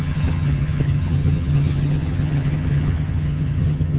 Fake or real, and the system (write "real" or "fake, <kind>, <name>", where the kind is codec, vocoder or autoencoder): fake, vocoder, HiFi-GAN